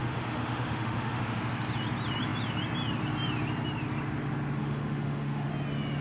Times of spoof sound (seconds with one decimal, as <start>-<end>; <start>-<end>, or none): 0.0-1.4; 4.6-5.5